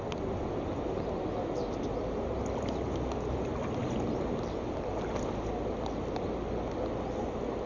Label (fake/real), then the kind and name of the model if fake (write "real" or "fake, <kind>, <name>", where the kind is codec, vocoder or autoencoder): real